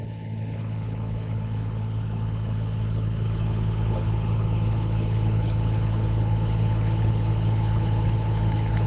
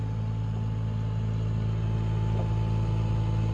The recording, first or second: second